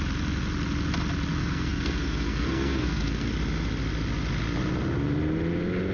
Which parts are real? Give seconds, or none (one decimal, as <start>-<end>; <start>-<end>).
0.0-1.4; 3.3-5.9